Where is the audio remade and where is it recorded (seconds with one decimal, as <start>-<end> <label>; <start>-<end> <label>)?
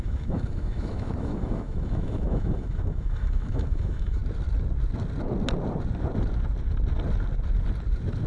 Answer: 0.0-4.2 remade; 4.2-8.3 recorded